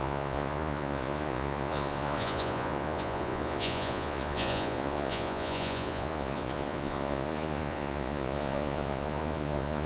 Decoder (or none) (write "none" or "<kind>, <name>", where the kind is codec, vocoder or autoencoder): vocoder, Vocos